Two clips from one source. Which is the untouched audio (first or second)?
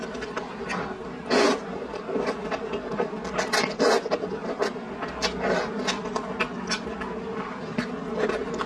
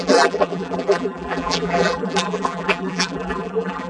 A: first